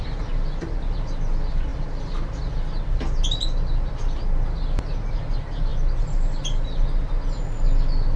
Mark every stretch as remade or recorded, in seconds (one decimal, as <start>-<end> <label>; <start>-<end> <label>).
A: 0.0-8.2 recorded

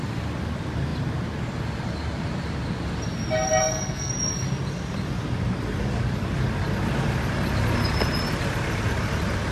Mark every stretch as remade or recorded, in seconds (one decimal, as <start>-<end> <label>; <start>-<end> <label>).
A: 0.0-3.6 recorded; 3.6-4.1 remade; 4.1-9.5 recorded